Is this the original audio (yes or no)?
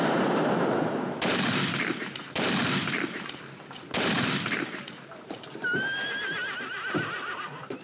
no